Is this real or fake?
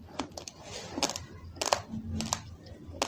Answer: real